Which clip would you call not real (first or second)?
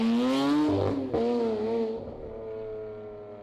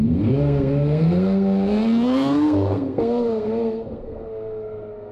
second